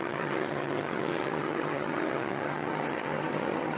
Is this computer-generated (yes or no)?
yes